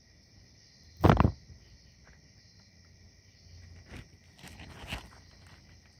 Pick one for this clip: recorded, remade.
recorded